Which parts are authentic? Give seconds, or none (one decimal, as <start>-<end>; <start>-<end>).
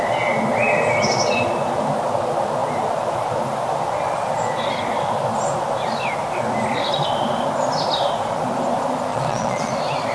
0.0-9.1; 9.7-10.1